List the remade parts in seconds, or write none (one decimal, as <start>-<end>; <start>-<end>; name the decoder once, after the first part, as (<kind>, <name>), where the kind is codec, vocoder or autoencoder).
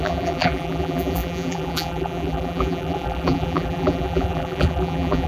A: 0.0-5.3 (vocoder, BigVGAN v2)